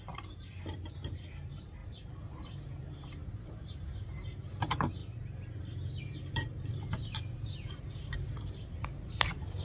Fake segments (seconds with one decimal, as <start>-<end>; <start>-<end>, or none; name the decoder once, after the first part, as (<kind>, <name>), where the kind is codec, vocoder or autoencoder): 0.0-5.0 (vocoder, BigVGAN v2); 6.0-9.6